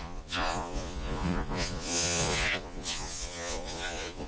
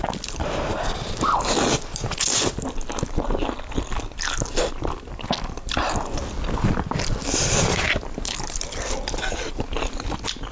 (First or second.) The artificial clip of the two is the first